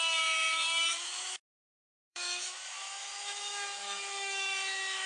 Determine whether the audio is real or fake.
fake